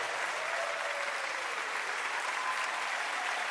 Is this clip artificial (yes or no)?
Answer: no